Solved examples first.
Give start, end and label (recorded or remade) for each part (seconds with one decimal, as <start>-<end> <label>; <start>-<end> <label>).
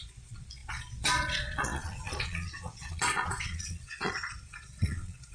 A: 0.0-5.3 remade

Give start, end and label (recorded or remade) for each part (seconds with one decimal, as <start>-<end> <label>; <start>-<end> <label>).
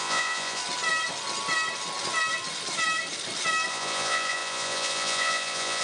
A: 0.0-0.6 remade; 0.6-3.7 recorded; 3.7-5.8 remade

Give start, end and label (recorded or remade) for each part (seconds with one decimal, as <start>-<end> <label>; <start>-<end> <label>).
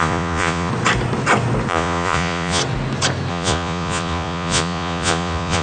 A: 0.0-0.7 remade; 0.7-1.7 recorded; 1.7-2.6 remade; 2.6-3.3 recorded; 3.3-5.6 remade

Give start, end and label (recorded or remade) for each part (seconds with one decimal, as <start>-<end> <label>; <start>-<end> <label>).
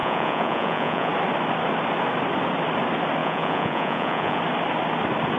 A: 0.0-1.1 remade; 1.1-3.2 recorded; 3.2-4.4 remade; 4.4-5.4 recorded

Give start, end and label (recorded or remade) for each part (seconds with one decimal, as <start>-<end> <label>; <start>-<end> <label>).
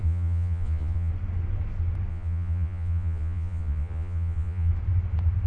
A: 0.0-1.1 remade; 1.1-2.1 recorded; 2.1-4.7 remade; 4.7-5.5 recorded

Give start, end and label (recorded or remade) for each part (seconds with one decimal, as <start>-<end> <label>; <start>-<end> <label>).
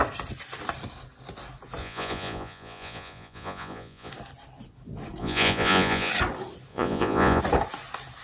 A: 0.0-1.8 recorded; 1.8-4.1 remade; 4.1-5.2 recorded; 5.2-6.1 remade; 6.1-6.7 recorded; 6.7-7.4 remade; 7.4-8.2 recorded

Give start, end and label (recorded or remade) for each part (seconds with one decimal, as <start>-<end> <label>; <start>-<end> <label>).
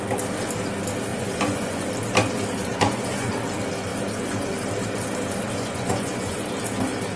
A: 0.0-1.1 recorded; 1.1-1.9 remade; 1.9-2.7 recorded; 2.7-3.3 remade; 3.3-3.9 recorded; 3.9-4.5 remade; 4.5-5.5 recorded; 5.5-6.5 remade; 6.5-7.2 recorded